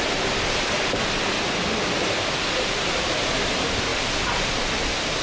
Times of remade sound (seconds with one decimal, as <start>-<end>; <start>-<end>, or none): none